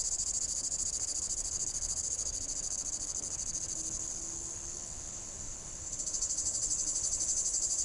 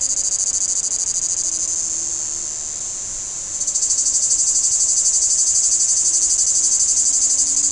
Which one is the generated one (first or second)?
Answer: first